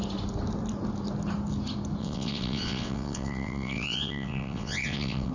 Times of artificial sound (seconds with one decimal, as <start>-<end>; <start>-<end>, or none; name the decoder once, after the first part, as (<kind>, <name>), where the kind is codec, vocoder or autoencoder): 2.0-5.3 (vocoder, WaveNeXt)